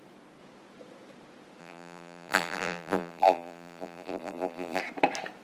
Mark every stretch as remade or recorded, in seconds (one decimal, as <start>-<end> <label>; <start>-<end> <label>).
0.0-1.6 recorded; 1.6-4.8 remade; 4.8-5.4 recorded